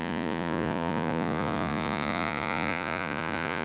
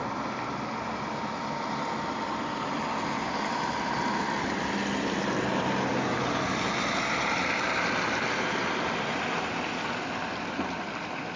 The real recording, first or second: second